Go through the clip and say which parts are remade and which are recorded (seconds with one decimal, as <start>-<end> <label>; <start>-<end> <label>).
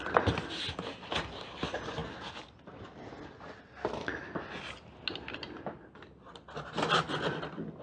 0.0-7.8 recorded